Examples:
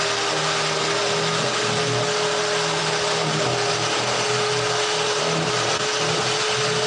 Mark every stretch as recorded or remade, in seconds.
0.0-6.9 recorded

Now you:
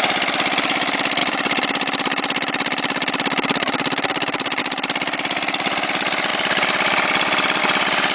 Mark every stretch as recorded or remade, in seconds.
0.0-1.2 recorded; 1.2-4.6 remade; 4.6-6.3 recorded; 6.3-7.6 remade; 7.6-8.1 recorded

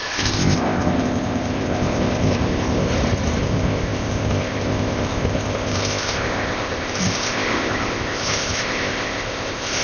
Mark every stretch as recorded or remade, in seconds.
0.0-2.9 remade; 2.9-3.4 recorded; 3.4-9.8 remade

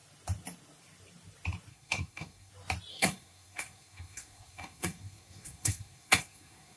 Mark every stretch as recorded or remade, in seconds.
0.0-1.7 recorded; 1.7-2.5 remade; 2.5-2.9 recorded; 2.9-6.8 remade